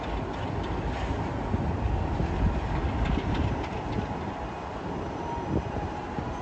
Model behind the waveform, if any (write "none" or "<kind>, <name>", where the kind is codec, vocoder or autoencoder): none